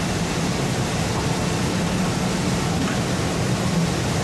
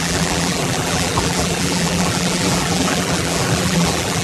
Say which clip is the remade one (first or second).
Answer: second